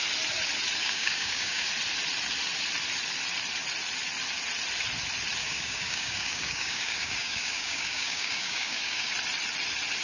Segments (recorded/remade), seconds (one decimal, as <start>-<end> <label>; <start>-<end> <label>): 0.0-0.8 recorded; 0.8-1.7 remade; 1.7-5.4 recorded; 5.4-9.1 remade; 9.1-10.0 recorded